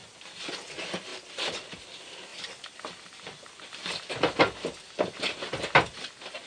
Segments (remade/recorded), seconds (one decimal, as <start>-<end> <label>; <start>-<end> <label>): 0.0-0.5 remade; 0.5-2.3 recorded; 2.3-4.1 remade; 4.1-6.5 recorded